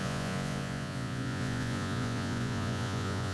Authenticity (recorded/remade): remade